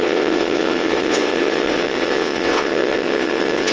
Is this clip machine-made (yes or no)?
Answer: yes